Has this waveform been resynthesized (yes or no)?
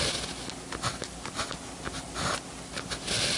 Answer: no